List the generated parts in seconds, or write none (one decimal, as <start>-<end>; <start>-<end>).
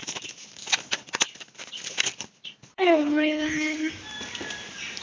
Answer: 2.7-3.9